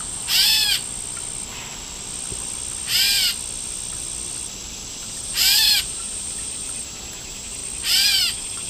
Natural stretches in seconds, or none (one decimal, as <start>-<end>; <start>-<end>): 0.6-4.9; 7.6-8.1